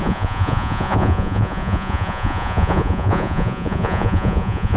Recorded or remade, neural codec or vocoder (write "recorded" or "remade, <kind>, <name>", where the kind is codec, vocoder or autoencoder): remade, vocoder, Vocos